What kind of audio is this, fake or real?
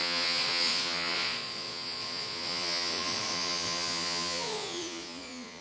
fake